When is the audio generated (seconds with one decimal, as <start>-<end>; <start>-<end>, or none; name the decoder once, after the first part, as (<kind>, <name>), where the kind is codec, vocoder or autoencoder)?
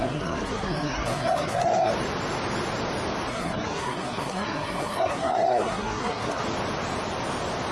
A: 0.0-1.9 (codec, SNAC); 3.3-6.4